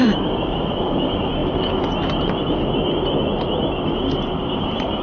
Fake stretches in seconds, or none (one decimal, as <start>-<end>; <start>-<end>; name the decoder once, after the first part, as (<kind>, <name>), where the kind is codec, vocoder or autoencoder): 0.0-1.4 (vocoder, BigVGAN v2); 4.4-5.0